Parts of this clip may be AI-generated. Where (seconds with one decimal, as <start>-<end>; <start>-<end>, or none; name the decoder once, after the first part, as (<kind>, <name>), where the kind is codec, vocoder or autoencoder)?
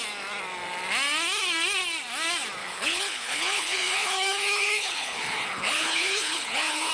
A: 2.6-6.9 (codec, HILCodec)